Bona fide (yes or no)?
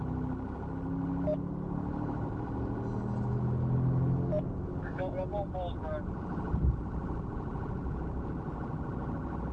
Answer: yes